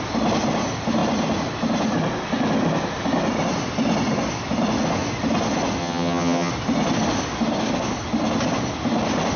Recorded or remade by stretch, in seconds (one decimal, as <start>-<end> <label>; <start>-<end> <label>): 0.0-5.8 recorded; 5.8-6.5 remade; 6.5-9.4 recorded

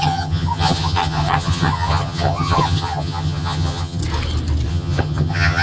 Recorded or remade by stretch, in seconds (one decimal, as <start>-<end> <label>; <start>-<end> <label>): 0.0-4.0 remade; 4.0-4.7 recorded; 4.7-5.6 remade

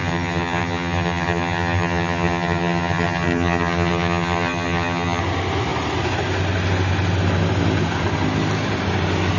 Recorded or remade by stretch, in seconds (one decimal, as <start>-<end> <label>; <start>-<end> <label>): 0.0-5.2 remade; 5.2-9.4 recorded

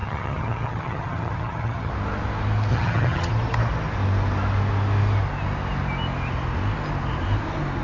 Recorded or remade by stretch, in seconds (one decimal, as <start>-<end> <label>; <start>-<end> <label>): 0.0-1.9 remade; 1.9-2.7 recorded; 2.7-3.3 remade; 3.3-7.8 recorded